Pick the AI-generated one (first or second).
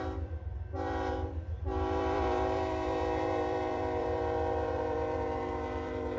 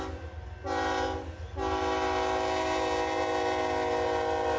first